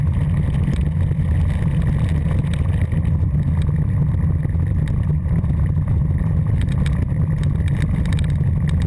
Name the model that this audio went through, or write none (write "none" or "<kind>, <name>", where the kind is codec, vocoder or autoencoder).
none